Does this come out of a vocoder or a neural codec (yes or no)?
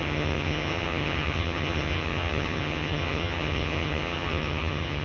yes